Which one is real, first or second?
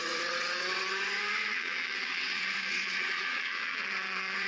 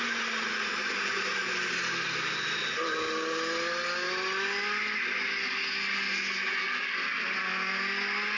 second